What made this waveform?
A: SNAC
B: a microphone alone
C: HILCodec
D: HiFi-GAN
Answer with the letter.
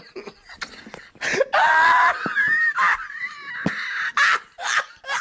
B